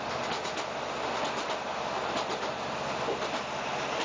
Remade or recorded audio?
recorded